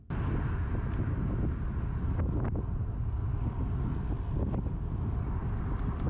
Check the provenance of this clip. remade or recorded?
recorded